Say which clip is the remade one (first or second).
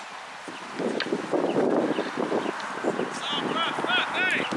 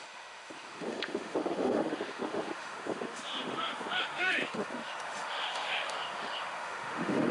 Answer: second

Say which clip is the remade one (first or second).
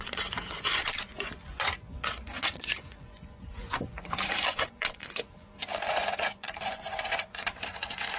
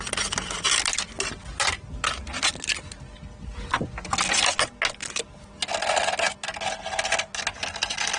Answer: first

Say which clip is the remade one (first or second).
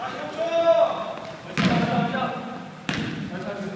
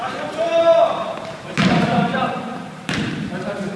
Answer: second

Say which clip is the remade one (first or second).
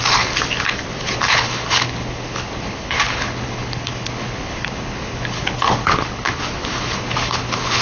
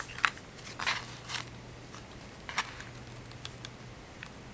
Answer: first